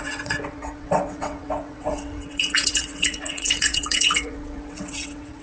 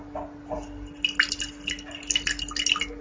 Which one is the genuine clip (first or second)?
second